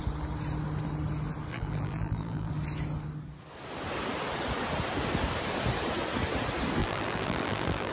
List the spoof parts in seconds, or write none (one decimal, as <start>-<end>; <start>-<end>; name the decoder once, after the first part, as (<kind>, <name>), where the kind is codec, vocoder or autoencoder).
1.5-2.5 (vocoder, BigVGAN v2); 6.8-7.9